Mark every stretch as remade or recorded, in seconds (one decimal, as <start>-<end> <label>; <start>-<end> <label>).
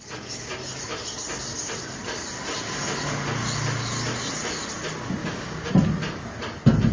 0.0-5.2 recorded; 5.2-5.7 remade; 5.7-6.9 recorded